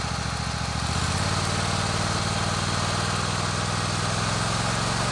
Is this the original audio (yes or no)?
yes